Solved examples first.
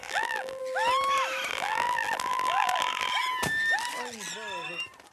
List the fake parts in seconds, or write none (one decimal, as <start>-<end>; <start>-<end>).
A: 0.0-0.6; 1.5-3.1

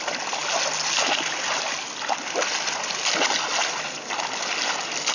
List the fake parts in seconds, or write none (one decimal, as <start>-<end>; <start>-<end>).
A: none

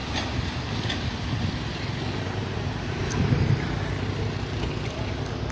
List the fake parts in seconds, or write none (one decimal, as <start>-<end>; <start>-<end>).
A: 0.0-0.6; 2.4-3.8